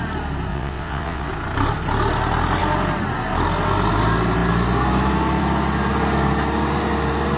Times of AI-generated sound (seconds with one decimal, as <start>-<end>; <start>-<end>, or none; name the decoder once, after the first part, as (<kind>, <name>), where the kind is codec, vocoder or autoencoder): 0.5-1.3 (vocoder, WaveNeXt)